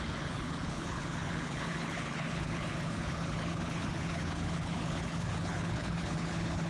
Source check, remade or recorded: remade